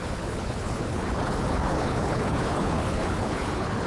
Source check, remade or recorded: remade